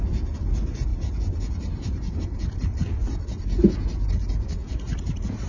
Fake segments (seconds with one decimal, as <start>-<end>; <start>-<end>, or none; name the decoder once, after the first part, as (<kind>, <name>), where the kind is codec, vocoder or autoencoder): none